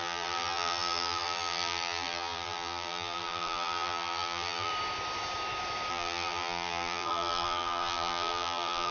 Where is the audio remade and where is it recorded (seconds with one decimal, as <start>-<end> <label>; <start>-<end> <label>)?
0.0-4.7 remade; 4.7-5.9 recorded; 5.9-8.9 remade